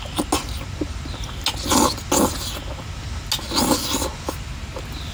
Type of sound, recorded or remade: recorded